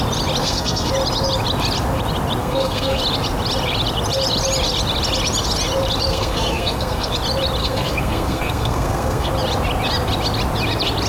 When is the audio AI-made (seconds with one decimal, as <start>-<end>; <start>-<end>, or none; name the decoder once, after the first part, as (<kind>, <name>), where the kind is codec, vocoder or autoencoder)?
0.4-0.9 (codec, SNAC); 2.4-3.0; 6.1-7.1; 7.6-9.3